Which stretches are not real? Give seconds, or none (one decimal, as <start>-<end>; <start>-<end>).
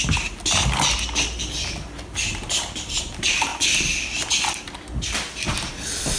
none